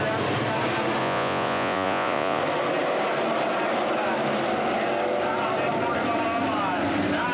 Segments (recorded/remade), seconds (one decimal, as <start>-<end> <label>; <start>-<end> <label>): 0.0-1.0 recorded; 1.0-2.4 remade; 2.4-7.3 recorded